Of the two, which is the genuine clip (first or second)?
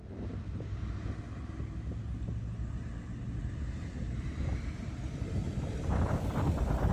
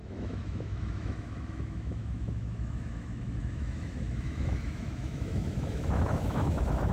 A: first